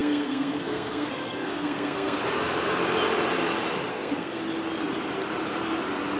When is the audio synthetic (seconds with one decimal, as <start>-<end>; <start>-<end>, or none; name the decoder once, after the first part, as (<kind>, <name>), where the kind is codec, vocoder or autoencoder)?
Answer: 0.0-2.2 (codec, SNAC); 3.9-4.4